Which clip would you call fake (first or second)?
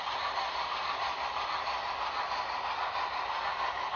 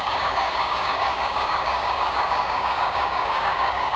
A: second